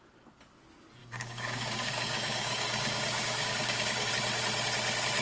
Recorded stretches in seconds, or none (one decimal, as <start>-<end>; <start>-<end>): 0.0-1.0; 4.1-5.2